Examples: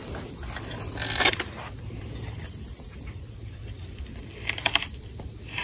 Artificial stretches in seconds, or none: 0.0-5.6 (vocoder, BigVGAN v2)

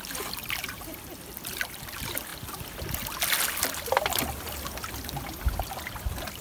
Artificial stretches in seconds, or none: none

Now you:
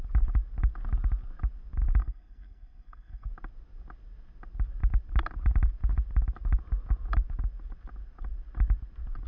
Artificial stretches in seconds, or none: 2.0-3.3 (codec, SNAC)

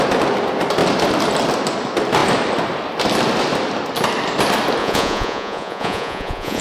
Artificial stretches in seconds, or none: 4.8-6.6 (vocoder, Vocos)